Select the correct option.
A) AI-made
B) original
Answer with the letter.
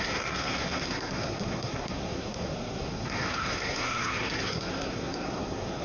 A